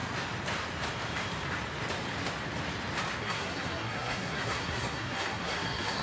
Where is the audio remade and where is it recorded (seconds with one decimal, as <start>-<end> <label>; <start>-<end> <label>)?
0.0-3.2 recorded; 3.2-6.0 remade